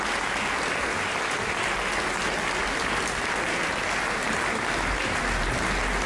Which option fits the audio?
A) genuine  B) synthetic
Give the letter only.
A